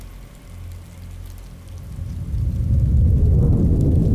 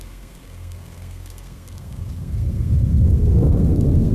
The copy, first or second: second